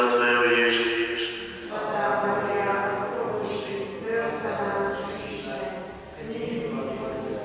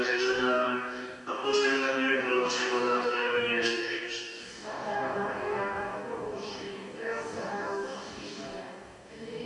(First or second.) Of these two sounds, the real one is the first